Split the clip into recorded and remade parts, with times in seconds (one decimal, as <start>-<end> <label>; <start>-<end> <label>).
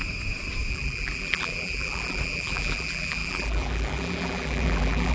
0.0-0.7 recorded; 0.7-5.1 remade